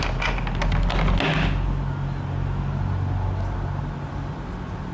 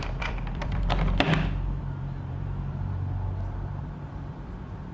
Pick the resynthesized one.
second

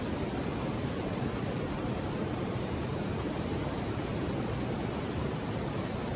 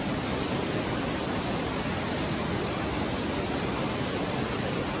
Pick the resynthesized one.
first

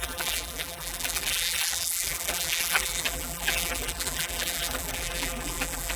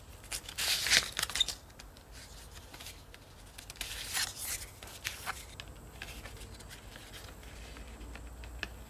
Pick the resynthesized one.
first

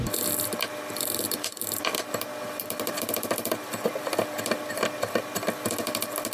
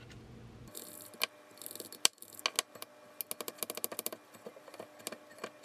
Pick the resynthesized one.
first